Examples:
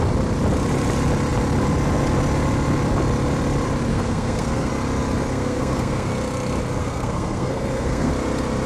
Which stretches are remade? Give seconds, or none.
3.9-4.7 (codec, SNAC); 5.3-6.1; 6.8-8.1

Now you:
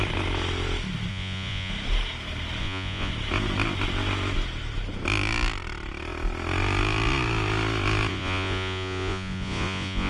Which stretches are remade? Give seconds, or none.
1.1-1.7 (vocoder, Vocos); 2.6-3.1; 8.1-10.1